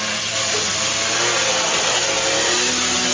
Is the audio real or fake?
real